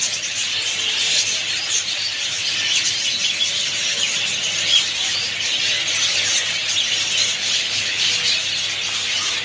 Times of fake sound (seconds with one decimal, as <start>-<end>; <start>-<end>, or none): 7.4-8.1